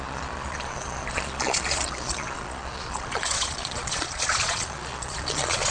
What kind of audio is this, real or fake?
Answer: fake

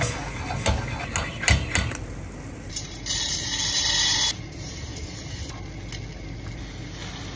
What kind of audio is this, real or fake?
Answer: real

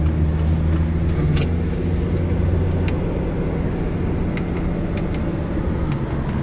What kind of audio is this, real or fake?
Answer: real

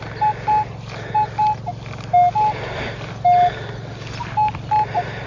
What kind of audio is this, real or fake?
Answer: real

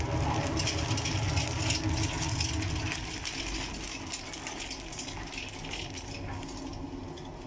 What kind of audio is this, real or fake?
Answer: real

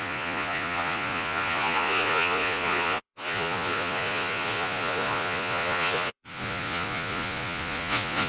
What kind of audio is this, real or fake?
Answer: fake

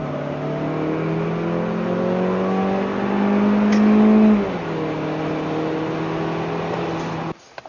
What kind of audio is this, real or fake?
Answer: real